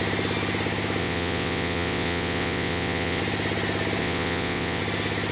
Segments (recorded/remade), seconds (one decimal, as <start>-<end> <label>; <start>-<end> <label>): 0.0-1.0 recorded; 1.0-3.2 remade; 3.2-4.0 recorded; 4.0-4.8 remade; 4.8-5.3 recorded